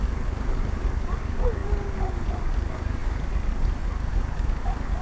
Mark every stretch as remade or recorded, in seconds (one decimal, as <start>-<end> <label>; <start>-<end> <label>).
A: 0.0-5.0 remade